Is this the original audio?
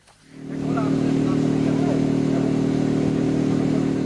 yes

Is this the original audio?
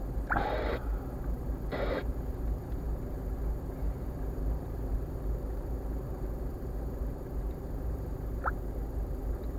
no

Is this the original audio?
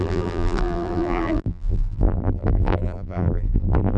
no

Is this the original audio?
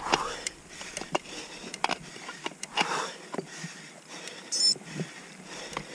no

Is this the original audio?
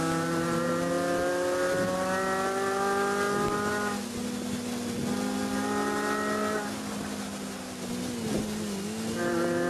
yes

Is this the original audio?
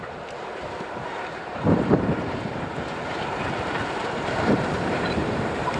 no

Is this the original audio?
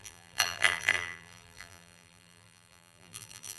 no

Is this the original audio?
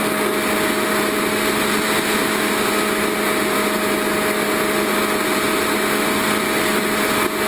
yes